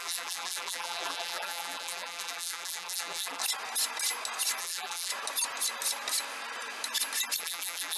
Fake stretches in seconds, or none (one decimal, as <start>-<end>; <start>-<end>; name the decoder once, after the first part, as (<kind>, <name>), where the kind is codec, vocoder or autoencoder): 0.0-3.4 (vocoder, BigVGAN v2); 4.6-5.1; 7.4-8.0